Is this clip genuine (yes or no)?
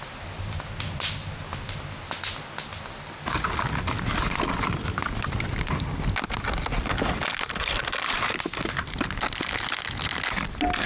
yes